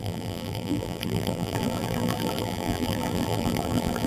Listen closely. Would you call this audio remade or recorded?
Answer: remade